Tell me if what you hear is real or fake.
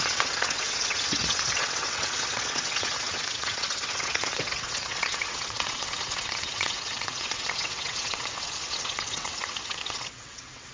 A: fake